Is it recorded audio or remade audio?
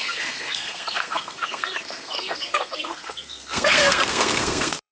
remade